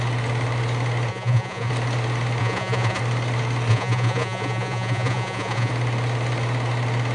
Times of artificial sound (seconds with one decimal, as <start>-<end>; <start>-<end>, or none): 1.1-1.7; 2.4-3.0; 3.7-5.7